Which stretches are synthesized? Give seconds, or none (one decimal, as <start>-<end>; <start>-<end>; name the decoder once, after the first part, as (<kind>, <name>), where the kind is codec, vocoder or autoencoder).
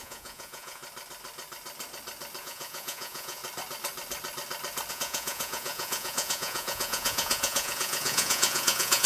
0.0-0.8 (vocoder, Vocos); 2.4-3.4; 4.9-9.1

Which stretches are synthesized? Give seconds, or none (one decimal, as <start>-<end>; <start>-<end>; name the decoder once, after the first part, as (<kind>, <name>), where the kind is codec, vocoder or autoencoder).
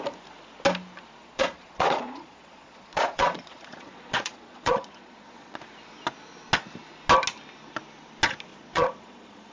1.2-5.6 (vocoder, Vocos); 8.5-9.5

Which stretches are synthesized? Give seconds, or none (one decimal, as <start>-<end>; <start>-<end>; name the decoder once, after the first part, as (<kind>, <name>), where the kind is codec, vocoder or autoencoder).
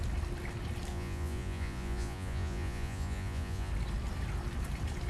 0.9-3.7 (vocoder, Vocos)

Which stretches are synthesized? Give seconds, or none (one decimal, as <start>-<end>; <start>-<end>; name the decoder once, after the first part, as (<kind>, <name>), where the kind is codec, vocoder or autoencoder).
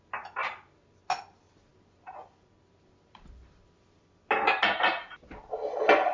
none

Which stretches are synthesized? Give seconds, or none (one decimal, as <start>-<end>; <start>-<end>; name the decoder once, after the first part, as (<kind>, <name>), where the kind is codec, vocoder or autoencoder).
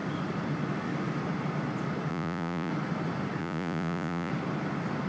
2.1-2.7 (vocoder, Vocos); 3.4-4.3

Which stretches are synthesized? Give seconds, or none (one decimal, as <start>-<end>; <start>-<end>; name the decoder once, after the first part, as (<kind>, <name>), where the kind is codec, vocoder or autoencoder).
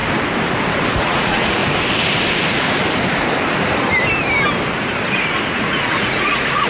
1.0-1.6 (vocoder, Vocos); 5.6-6.7